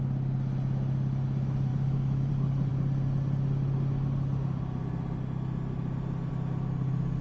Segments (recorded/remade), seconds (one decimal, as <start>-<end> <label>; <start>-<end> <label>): 0.0-1.7 recorded; 1.7-2.3 remade; 2.3-7.2 recorded